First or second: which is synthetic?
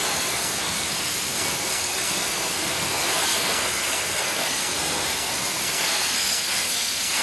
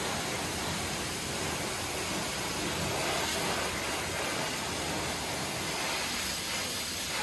first